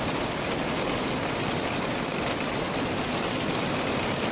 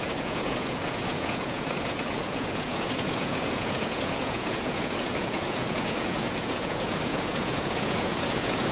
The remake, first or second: second